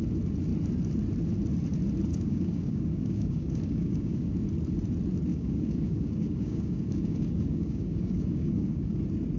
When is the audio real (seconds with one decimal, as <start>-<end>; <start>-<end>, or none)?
0.0-2.1; 4.3-5.3; 9.0-9.4